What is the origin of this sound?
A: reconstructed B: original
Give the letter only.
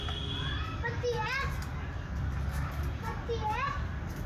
B